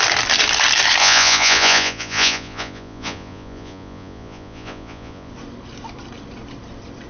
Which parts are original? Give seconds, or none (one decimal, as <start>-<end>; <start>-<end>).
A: 0.0-1.0; 5.3-7.1